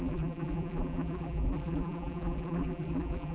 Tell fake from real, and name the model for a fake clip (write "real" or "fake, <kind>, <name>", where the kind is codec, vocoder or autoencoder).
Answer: fake, vocoder, BigVGAN v2